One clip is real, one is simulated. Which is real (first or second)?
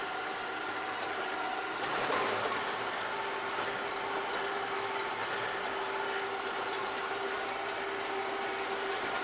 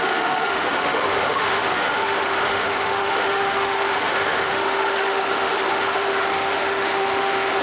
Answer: first